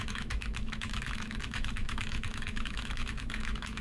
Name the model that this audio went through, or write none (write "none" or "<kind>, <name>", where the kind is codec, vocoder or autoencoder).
autoencoder, DAC-VAE